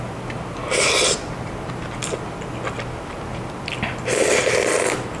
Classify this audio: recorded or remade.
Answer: recorded